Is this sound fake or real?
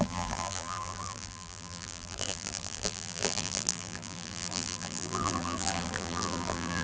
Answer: fake